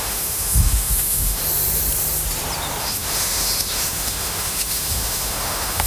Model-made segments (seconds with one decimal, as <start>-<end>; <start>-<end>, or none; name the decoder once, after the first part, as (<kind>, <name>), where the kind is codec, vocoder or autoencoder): 0.0-1.4 (autoencoder, DAC-VAE); 2.8-5.9